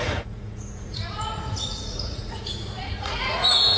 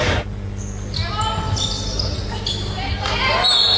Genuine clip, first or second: second